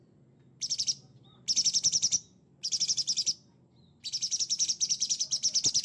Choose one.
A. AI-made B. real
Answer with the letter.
B